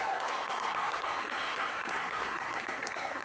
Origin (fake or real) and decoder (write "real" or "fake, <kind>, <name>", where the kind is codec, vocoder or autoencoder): fake, codec, SNAC